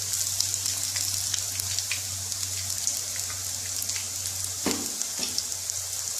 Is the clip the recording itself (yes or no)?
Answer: yes